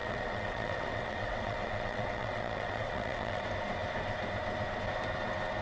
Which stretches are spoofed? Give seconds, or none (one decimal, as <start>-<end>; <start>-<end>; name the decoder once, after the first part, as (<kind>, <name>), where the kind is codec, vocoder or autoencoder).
0.0-3.4 (vocoder, WaveNeXt)